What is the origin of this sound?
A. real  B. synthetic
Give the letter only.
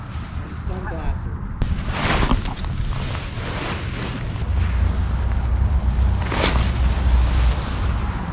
A